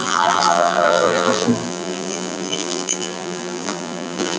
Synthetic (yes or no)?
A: yes